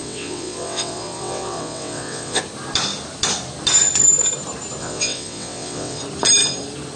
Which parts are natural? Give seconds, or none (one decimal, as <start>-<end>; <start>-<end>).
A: 2.4-4.8; 6.0-7.0